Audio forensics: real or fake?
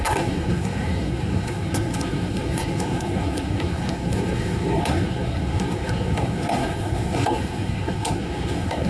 fake